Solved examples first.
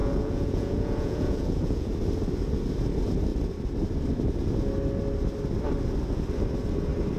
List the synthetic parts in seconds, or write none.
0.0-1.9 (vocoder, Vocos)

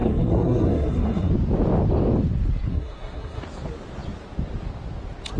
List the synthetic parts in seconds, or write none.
0.0-1.3 (codec, SNAC); 2.7-3.4

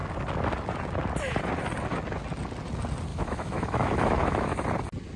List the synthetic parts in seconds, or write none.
3.1-4.6 (autoencoder, DAC-VAE)

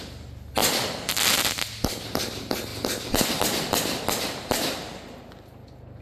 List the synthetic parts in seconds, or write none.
2.7-5.2 (vocoder, BigVGAN v2)

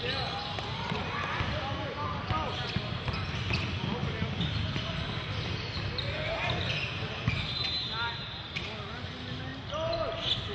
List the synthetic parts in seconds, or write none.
none

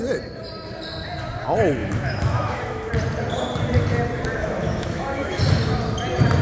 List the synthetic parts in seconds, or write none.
1.8-2.9 (autoencoder, DAC-VAE); 4.4-5.4